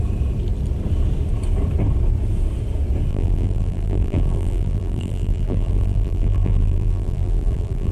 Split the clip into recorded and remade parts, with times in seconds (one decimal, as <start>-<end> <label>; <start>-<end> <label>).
0.0-3.1 recorded; 3.1-7.9 remade

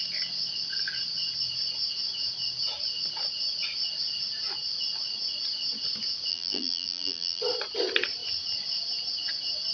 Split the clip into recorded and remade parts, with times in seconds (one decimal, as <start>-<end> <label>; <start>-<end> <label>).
0.0-6.3 recorded; 6.3-7.4 remade; 7.4-9.7 recorded

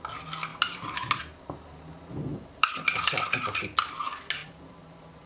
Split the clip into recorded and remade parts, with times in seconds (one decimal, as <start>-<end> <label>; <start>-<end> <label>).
0.0-0.5 recorded; 0.5-1.2 remade; 1.2-2.3 recorded; 2.3-2.8 remade; 2.8-4.4 recorded; 4.4-5.3 remade

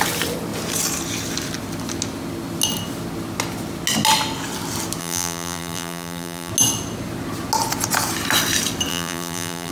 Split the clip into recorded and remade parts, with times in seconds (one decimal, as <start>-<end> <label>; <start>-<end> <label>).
0.0-5.0 recorded; 5.0-6.5 remade; 6.5-8.9 recorded; 8.9-9.7 remade

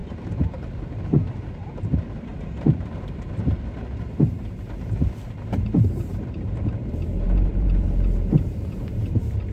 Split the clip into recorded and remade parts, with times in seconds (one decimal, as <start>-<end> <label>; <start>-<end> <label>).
0.0-9.5 remade